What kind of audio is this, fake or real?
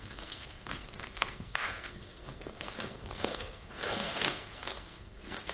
fake